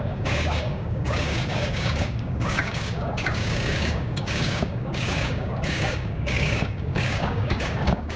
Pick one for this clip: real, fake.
fake